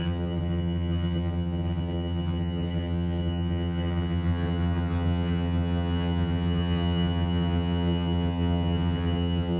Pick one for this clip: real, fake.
fake